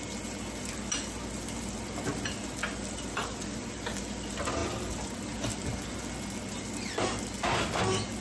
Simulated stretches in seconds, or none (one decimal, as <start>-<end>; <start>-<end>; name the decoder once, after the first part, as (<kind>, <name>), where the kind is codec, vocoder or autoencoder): none